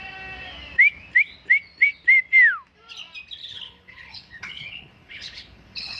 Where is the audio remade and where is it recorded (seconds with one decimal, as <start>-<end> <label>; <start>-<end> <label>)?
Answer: 0.0-3.4 recorded; 3.4-6.0 remade